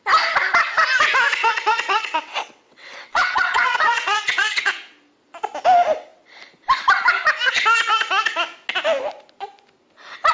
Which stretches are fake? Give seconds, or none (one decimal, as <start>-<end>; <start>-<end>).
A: 1.4-4.7